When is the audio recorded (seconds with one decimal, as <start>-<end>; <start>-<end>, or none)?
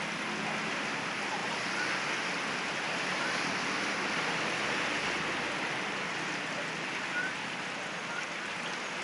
0.0-9.0